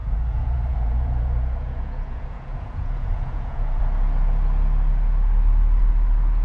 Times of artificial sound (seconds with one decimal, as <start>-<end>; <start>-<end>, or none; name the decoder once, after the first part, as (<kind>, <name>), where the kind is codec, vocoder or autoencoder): 0.0-3.8 (vocoder, Vocos)